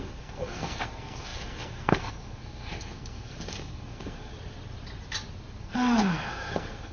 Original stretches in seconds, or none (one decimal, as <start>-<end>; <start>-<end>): 4.3-5.6